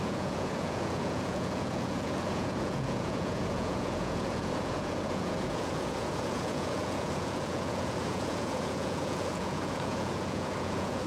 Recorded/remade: remade